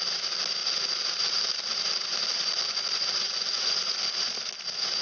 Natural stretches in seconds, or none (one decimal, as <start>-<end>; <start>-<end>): 0.0-3.2; 3.8-5.0